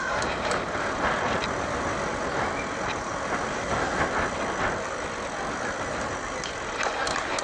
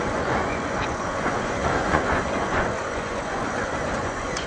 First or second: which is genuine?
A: first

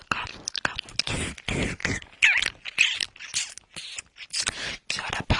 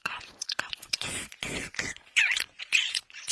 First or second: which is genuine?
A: first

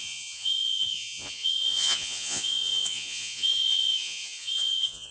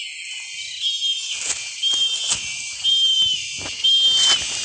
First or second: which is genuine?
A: second